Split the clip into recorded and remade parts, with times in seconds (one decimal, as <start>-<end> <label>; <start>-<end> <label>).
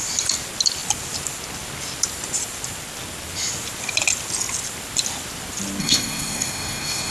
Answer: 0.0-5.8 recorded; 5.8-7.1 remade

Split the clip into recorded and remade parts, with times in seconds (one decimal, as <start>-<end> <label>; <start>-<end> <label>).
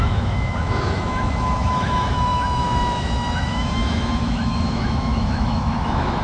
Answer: 0.0-6.2 remade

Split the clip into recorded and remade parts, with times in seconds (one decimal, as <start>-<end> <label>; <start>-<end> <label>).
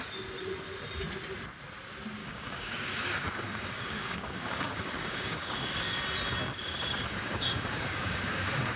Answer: 0.0-2.2 recorded; 2.2-6.0 remade; 6.0-6.5 recorded; 6.5-8.8 remade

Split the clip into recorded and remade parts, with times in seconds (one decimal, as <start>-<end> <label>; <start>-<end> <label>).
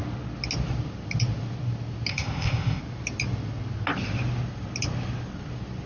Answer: 0.0-2.1 recorded; 2.1-2.8 remade; 2.8-5.9 recorded